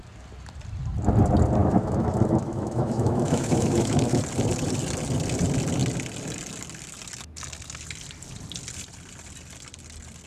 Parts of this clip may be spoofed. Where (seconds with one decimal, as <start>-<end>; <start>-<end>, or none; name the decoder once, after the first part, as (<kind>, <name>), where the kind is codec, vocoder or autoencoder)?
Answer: 1.6-4.2 (autoencoder, DAC-VAE)